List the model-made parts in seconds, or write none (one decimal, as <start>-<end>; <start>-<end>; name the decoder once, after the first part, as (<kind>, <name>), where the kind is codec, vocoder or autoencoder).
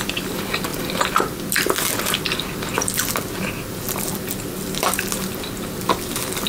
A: 0.0-6.5 (vocoder, BigVGAN v2)